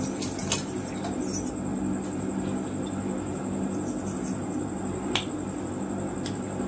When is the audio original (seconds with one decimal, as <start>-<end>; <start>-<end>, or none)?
0.0-6.7